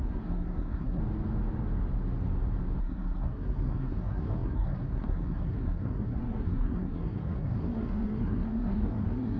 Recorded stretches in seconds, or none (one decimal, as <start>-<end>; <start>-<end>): 1.0-2.8